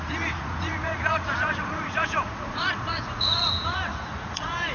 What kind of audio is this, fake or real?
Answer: fake